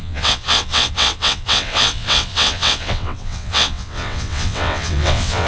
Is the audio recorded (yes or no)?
no